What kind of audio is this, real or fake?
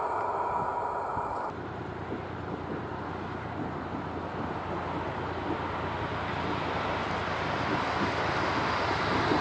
real